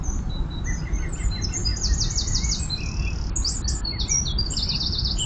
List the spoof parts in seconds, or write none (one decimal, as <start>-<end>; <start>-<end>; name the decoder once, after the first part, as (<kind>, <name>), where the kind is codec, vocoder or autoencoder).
none

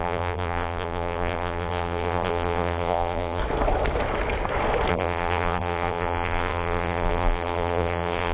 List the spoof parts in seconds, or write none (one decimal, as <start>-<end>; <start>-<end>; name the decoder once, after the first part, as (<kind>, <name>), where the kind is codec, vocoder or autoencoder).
0.0-3.4 (vocoder, BigVGAN v2); 4.9-8.3

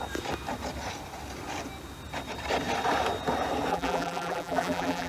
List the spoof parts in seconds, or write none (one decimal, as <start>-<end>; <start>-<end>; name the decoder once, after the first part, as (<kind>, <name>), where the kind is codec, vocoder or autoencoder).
3.7-5.1 (vocoder, BigVGAN v2)

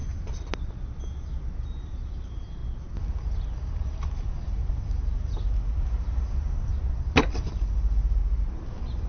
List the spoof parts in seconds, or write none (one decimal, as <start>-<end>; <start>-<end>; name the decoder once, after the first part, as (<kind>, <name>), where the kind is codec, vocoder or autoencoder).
1.8-2.6 (vocoder, BigVGAN v2); 3.7-6.7; 7.2-8.2; 8.7-9.1

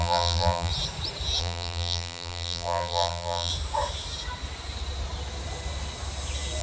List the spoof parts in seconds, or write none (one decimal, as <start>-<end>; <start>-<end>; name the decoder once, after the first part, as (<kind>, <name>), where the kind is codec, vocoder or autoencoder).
0.0-0.7 (vocoder, BigVGAN v2); 1.4-3.5

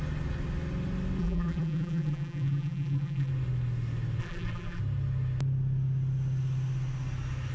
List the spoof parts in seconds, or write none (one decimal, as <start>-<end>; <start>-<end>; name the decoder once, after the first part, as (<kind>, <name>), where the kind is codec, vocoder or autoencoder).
1.2-3.3 (vocoder, BigVGAN v2); 4.2-4.8

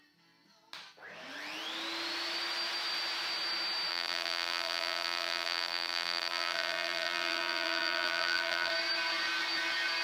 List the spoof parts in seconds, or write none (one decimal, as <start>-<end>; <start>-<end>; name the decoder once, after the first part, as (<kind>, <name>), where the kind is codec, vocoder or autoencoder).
3.9-8.7 (vocoder, BigVGAN v2)